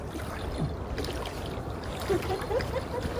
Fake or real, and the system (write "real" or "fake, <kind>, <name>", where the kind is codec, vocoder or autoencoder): fake, vocoder, BigVGAN v2